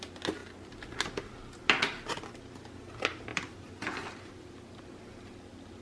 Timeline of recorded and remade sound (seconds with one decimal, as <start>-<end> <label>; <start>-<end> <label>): 0.0-5.8 recorded